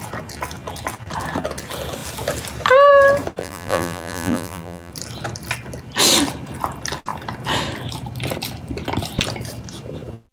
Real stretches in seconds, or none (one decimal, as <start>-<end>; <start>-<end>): 0.0-3.4; 4.9-10.3